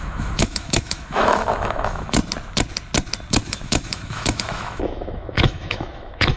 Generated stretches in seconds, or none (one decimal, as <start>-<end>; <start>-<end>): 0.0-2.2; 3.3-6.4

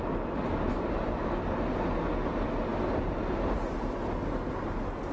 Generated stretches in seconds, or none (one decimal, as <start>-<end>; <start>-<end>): none

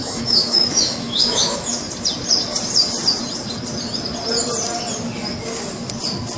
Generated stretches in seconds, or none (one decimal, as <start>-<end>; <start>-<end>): 0.0-1.8